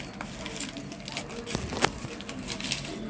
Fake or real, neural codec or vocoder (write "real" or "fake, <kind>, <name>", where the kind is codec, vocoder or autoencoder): real